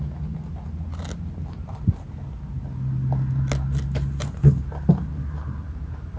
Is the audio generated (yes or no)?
no